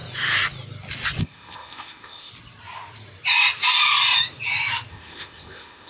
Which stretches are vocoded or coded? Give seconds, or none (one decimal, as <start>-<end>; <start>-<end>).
1.2-2.3; 4.9-5.9